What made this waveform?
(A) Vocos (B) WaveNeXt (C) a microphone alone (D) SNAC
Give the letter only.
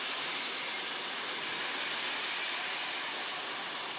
C